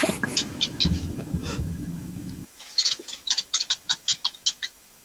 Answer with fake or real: fake